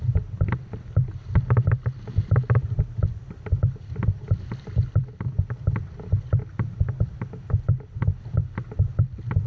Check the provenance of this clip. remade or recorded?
recorded